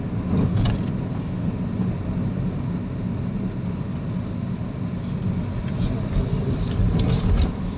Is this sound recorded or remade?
recorded